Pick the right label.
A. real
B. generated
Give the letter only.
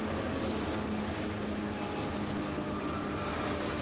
A